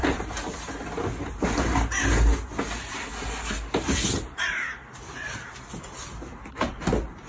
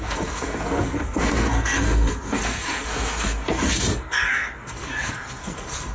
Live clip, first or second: first